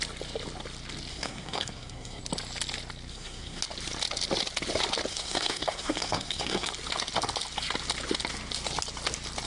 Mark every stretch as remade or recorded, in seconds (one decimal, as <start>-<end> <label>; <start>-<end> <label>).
0.0-1.1 recorded; 1.1-2.2 remade; 2.2-3.1 recorded; 3.1-3.6 remade; 3.6-5.1 recorded; 5.1-6.7 remade; 6.7-9.5 recorded